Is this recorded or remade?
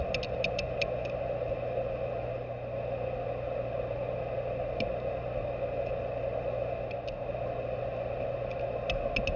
recorded